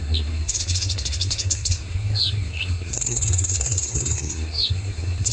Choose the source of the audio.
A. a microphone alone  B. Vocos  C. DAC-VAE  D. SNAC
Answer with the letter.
D